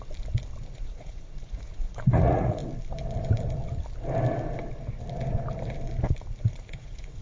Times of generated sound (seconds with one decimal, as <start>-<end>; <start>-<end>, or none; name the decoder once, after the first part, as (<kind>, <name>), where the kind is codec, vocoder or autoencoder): 0.7-2.6 (vocoder, Vocos); 6.4-7.2